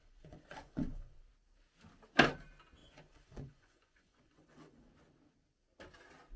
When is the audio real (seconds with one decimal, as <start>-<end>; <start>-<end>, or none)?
1.2-2.8; 4.9-6.4

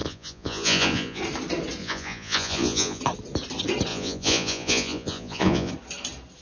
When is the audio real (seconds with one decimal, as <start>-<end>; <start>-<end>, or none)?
1.2-1.8; 3.0-3.9; 5.7-6.4

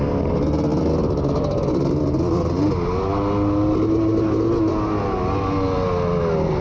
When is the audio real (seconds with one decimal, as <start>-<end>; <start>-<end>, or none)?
0.0-6.6

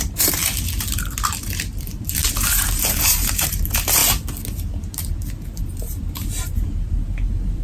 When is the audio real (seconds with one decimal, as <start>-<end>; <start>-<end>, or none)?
0.4-1.6; 4.0-5.6